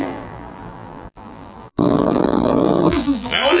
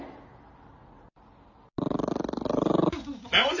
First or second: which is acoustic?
second